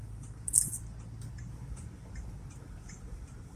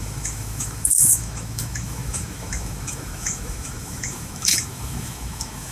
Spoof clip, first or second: second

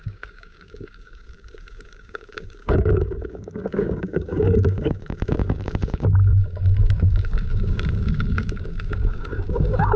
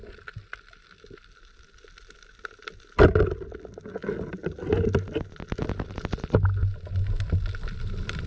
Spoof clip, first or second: first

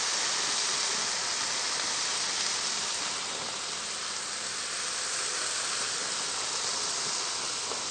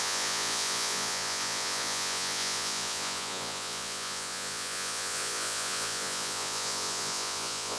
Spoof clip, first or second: second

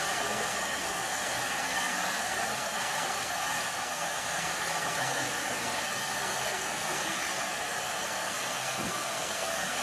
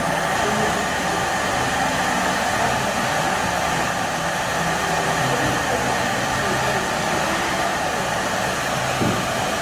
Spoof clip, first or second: first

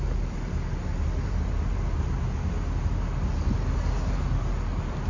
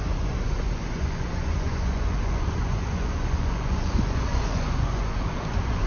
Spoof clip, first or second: second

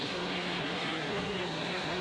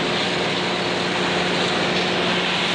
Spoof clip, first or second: first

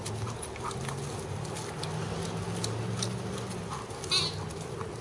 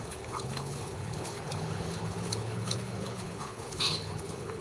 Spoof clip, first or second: second